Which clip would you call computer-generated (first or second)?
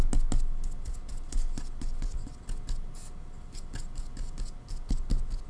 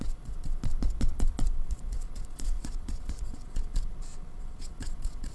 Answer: second